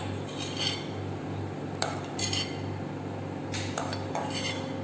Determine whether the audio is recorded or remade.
recorded